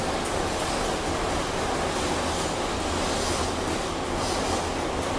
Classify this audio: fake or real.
real